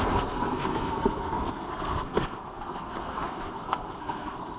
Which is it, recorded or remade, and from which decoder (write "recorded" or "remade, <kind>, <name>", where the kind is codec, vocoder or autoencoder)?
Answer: remade, codec, SNAC